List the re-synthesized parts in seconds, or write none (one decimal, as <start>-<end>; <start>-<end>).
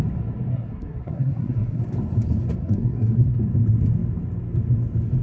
0.5-1.8; 2.6-3.4